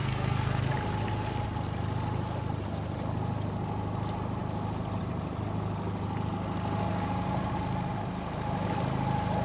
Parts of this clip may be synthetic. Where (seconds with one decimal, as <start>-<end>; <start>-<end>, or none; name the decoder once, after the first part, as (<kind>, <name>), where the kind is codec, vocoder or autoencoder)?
0.0-0.7 (codec, SNAC)